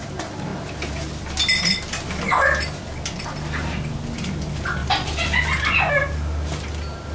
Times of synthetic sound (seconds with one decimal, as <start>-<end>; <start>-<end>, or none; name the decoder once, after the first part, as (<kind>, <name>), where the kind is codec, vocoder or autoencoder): none